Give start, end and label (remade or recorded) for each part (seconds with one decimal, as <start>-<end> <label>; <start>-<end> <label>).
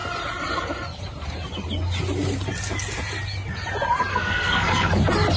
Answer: 0.0-4.1 recorded; 4.1-4.9 remade; 4.9-5.4 recorded